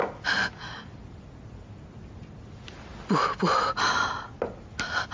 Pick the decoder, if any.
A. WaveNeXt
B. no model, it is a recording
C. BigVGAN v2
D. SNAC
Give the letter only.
B